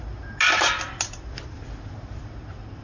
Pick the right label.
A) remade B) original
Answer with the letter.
B